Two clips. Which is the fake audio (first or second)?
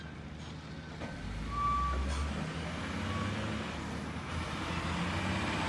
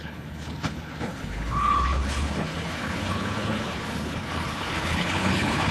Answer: second